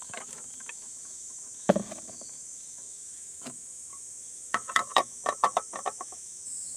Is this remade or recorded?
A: remade